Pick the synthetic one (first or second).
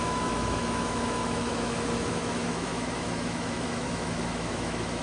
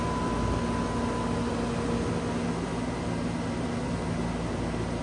first